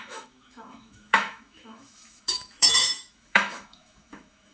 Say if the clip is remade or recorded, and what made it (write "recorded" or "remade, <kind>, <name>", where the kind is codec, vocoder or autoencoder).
remade, autoencoder, DAC-VAE